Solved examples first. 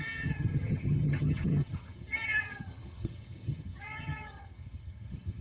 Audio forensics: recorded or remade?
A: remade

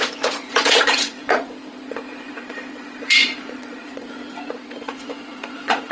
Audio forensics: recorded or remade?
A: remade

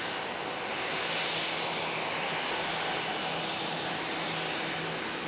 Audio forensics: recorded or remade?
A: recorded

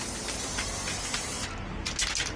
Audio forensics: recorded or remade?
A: recorded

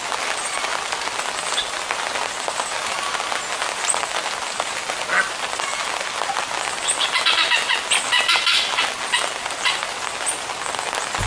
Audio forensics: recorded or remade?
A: recorded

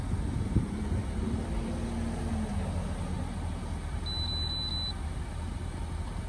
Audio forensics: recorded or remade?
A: recorded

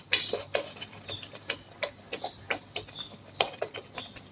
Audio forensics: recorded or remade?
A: recorded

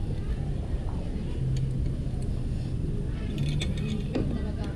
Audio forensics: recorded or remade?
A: recorded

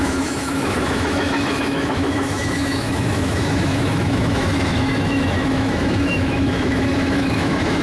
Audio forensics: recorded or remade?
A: remade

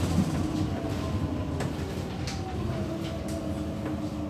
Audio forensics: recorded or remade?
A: recorded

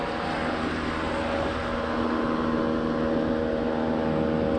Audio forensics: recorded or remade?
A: recorded